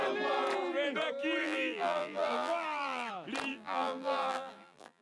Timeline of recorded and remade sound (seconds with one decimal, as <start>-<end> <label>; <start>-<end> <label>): 0.0-1.4 recorded; 1.4-3.1 remade; 3.1-3.5 recorded; 3.5-5.0 remade